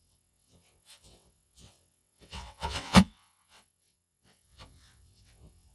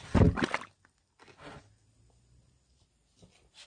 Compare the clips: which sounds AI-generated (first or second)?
first